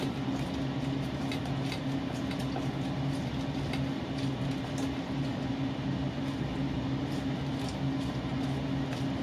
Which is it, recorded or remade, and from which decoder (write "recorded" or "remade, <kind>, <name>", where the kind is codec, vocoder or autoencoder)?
recorded